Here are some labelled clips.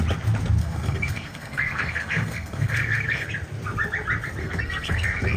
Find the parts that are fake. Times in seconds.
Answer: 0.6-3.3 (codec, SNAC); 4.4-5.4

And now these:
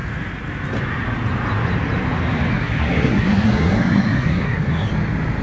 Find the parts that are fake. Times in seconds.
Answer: 2.5-4.9 (codec, SNAC)

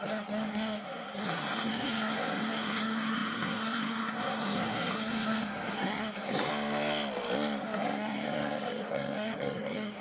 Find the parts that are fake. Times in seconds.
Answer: 0.0-6.5 (codec, SNAC); 7.6-10.0

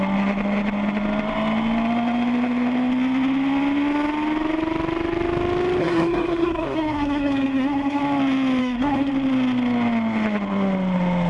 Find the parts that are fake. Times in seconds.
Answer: 5.8-8.0 (codec, SNAC); 8.6-9.1

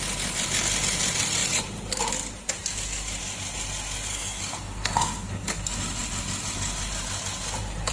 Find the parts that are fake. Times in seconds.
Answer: 4.1-5.3 (codec, SNAC)

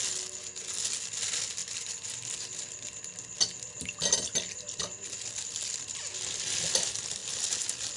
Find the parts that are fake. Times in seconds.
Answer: none

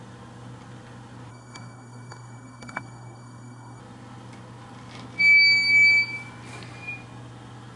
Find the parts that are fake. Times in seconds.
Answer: 1.3-3.8 (codec, SNAC)